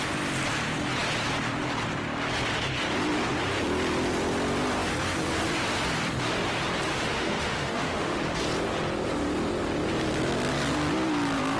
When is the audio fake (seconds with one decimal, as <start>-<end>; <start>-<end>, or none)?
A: 6.9-8.2